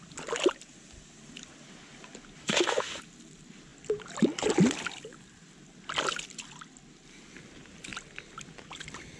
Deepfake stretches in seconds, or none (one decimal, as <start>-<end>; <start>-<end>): 2.4-3.0

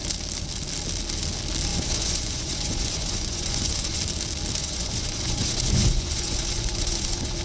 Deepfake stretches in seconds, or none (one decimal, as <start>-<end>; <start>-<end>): 1.7-4.0; 4.6-7.4